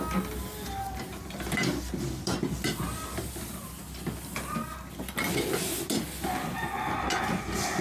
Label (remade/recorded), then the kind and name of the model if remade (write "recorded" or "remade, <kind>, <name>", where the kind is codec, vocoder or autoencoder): recorded